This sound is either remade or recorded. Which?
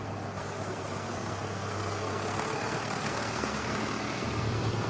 remade